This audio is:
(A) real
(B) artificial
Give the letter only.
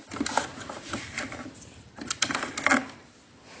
B